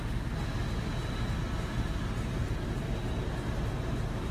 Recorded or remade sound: recorded